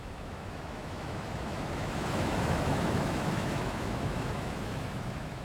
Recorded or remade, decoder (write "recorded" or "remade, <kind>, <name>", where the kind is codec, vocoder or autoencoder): remade, autoencoder, DAC-VAE